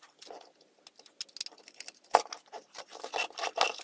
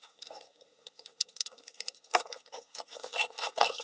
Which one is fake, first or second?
second